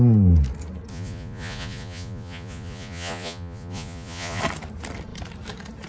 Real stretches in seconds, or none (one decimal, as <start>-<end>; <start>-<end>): 0.0-0.9; 4.4-5.9